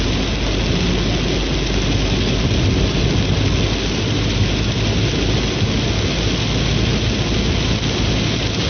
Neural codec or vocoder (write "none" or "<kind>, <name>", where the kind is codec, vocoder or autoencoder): none